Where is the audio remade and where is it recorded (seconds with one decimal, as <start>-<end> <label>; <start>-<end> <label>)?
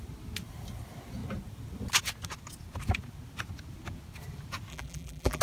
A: 0.0-4.7 recorded; 4.7-5.4 remade